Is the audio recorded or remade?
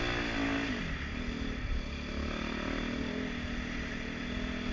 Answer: recorded